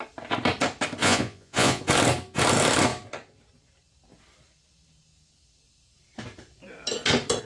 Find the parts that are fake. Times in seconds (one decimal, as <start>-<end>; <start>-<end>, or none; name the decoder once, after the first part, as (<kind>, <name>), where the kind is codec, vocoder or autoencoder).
1.0-1.8 (vocoder, Vocos)